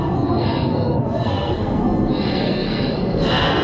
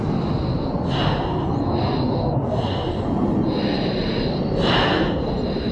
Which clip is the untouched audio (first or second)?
second